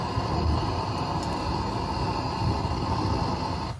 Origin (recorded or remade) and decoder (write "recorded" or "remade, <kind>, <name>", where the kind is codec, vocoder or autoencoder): recorded